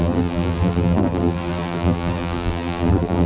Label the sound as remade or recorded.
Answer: remade